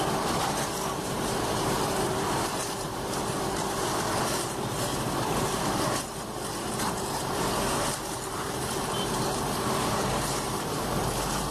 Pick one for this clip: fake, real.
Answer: fake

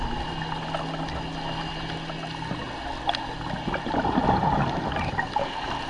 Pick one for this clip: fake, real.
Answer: real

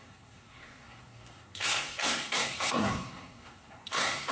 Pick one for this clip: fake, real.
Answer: fake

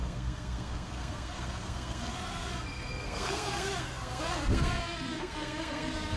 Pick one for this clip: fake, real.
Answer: fake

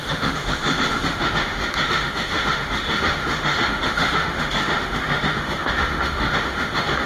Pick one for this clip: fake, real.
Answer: fake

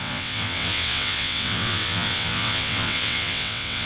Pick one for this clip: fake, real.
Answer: fake